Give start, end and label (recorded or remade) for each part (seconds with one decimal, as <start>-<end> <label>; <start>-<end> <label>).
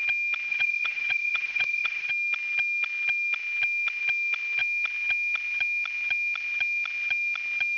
0.0-0.5 recorded; 0.5-2.1 remade; 2.1-7.8 recorded